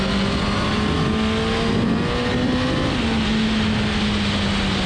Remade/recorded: recorded